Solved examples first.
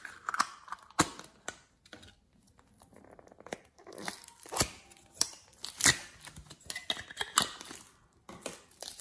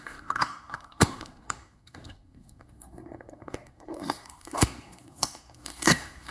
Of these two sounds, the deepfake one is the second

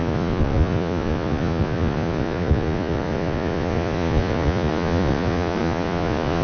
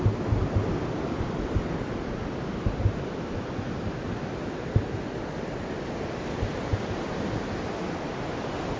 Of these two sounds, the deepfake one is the first